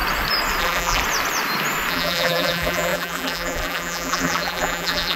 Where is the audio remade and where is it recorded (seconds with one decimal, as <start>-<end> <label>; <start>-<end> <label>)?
0.0-0.6 recorded; 0.6-1.0 remade; 1.0-1.9 recorded; 1.9-5.2 remade